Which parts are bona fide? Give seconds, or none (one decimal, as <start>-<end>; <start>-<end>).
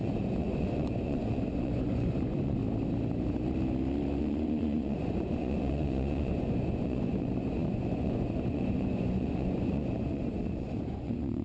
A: 2.6-4.2